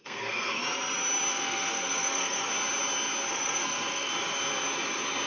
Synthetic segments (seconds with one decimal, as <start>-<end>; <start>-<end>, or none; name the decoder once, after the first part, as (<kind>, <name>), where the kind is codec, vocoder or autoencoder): 0.0-0.6 (codec, SNAC); 1.3-2.5; 3.3-4.1